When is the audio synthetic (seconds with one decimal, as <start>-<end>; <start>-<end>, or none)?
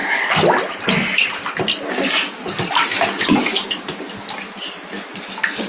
none